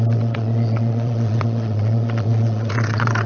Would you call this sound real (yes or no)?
no